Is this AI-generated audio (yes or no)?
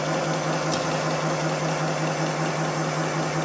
no